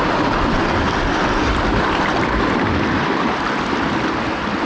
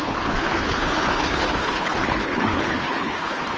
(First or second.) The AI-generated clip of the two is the second